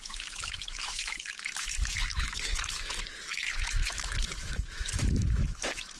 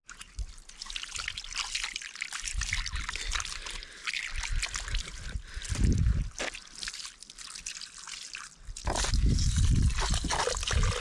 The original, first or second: second